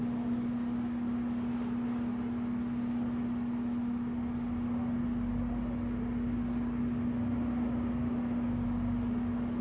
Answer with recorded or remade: recorded